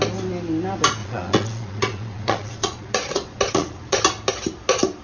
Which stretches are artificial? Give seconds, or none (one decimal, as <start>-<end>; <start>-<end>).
1.0-4.0